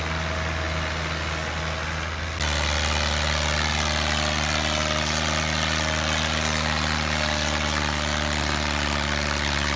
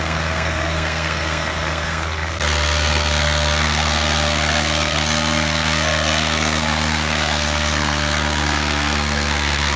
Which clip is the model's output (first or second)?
second